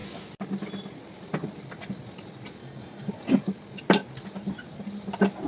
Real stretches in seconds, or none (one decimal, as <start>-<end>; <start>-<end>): 0.0-2.6; 3.1-5.5